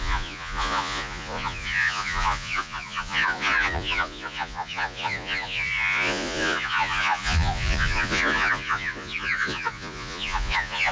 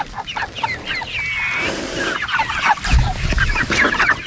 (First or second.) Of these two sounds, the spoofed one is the first